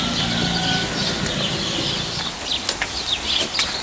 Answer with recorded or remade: recorded